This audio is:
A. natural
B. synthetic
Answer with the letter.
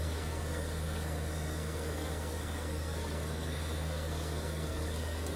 B